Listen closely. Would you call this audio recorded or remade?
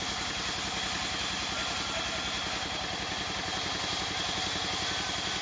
recorded